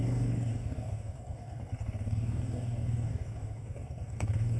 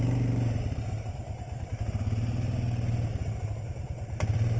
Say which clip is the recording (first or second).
second